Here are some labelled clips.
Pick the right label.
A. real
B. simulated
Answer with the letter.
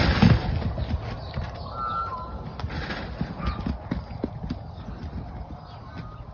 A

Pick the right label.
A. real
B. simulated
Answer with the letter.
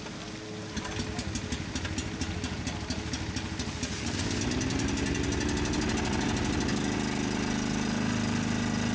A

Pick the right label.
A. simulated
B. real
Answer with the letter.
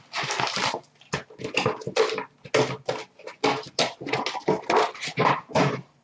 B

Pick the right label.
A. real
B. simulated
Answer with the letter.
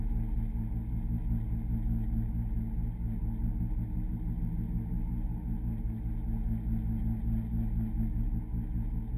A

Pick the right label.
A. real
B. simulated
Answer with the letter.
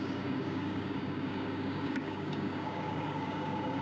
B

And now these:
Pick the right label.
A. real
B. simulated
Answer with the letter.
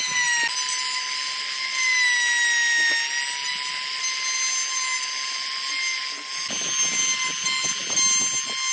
A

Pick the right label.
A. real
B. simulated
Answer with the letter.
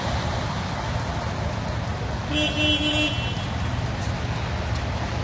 A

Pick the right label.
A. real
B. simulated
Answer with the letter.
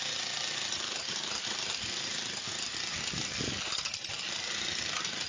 A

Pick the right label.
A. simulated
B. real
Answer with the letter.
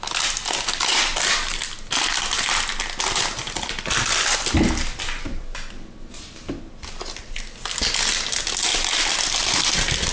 B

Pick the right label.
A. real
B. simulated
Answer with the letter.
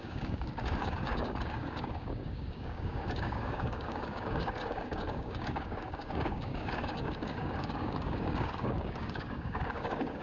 B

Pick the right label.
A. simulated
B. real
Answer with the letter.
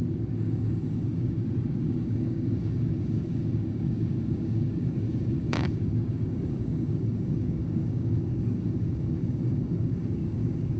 A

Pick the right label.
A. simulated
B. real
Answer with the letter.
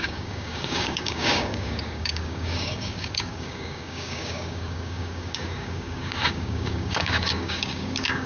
A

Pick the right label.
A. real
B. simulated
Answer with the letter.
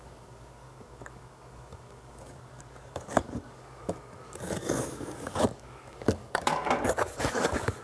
B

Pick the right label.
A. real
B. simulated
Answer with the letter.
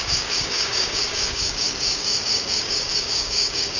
B